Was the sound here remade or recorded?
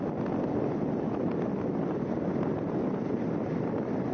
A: recorded